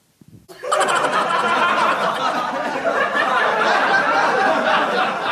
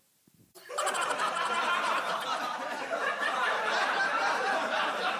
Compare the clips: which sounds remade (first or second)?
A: second